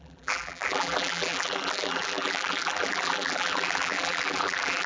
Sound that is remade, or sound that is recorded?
remade